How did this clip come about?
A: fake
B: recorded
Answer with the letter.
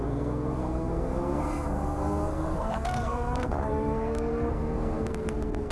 A